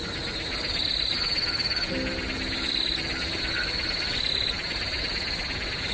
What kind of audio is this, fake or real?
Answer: real